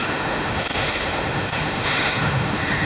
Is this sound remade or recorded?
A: remade